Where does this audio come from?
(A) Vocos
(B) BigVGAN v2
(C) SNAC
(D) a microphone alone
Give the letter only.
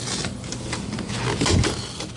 D